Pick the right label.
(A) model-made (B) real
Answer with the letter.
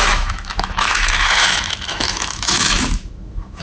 A